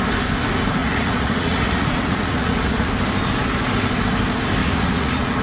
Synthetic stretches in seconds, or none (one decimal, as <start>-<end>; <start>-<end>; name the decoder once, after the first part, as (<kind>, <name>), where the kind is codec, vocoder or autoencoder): 0.8-2.9 (vocoder, Vocos); 4.6-5.4